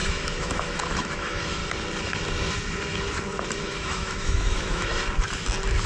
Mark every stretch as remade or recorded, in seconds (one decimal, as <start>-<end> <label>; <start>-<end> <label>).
0.0-1.6 remade; 1.6-3.6 recorded; 3.6-4.9 remade; 4.9-5.9 recorded